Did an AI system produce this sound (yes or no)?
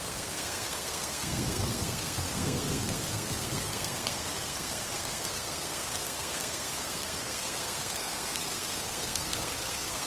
yes